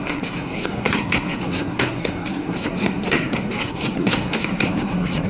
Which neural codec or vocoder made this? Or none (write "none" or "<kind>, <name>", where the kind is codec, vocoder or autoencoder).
codec, SNAC